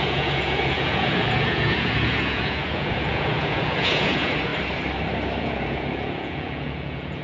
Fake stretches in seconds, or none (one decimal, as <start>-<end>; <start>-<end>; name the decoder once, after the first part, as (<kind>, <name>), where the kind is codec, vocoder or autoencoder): 0.0-4.5 (vocoder, Vocos); 5.4-7.2